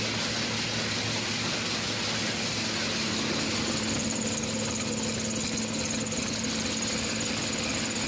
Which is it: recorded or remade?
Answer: recorded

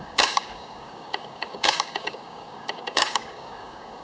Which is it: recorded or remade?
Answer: remade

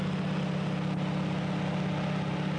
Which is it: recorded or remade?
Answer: recorded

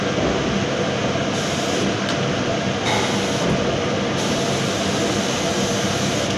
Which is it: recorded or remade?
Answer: recorded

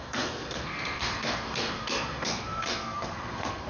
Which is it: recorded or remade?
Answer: remade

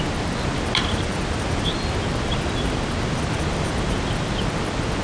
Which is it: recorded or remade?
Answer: recorded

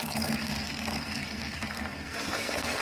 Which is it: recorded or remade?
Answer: remade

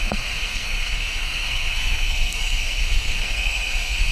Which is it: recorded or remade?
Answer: remade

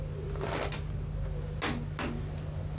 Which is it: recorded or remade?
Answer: recorded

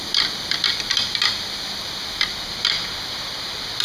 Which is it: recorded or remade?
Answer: recorded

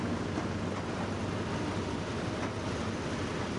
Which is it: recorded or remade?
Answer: recorded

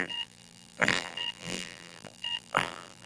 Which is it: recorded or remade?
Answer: remade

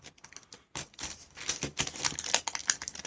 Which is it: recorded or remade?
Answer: recorded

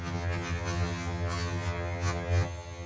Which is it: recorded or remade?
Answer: remade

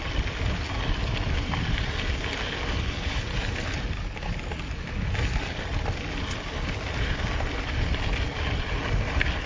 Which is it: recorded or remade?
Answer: recorded